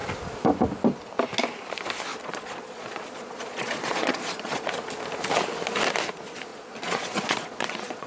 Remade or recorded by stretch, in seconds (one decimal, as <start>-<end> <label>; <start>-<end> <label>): 0.0-2.1 recorded; 2.1-4.7 remade; 4.7-6.5 recorded; 6.5-8.1 remade